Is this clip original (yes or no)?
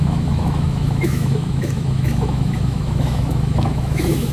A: no